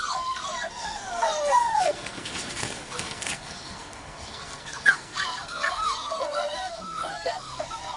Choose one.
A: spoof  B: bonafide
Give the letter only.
A